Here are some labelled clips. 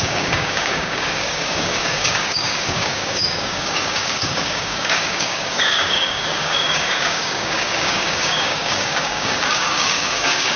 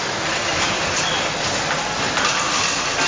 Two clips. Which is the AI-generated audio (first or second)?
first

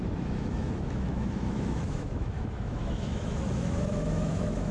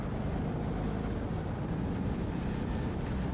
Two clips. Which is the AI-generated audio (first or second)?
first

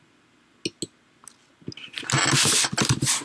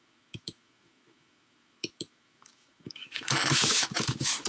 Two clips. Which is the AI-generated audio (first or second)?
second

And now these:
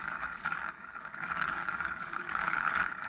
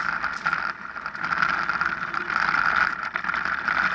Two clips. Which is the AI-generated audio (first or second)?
first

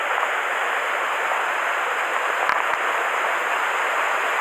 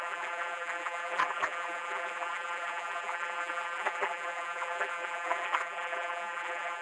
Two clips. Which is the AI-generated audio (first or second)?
second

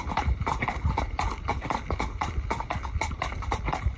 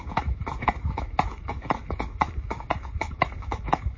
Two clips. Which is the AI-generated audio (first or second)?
second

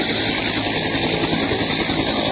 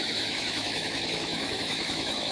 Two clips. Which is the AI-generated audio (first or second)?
second